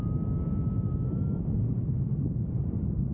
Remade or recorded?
recorded